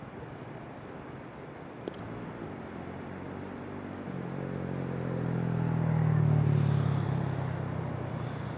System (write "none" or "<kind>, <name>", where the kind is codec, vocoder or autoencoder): none